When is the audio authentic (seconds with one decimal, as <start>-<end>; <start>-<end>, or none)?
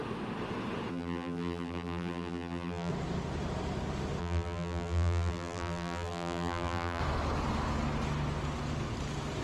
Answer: 0.0-0.9; 2.9-4.2; 7.0-9.4